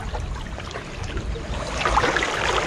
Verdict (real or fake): real